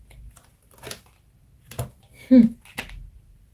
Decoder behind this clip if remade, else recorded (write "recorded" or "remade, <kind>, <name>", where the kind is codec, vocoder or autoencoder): recorded